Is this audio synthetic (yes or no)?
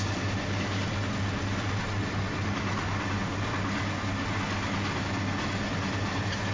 no